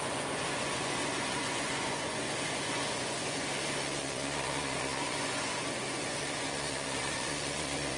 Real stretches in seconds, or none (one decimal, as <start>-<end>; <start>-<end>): none

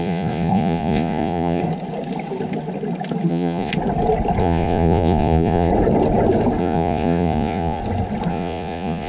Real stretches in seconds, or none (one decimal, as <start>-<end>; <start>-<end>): 1.6-3.3; 3.7-4.4; 5.7-6.6; 7.8-8.3